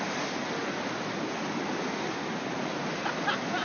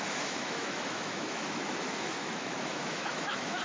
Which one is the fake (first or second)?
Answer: second